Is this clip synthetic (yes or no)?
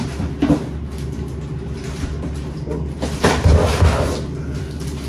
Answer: no